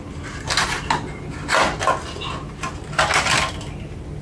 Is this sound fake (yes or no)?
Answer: no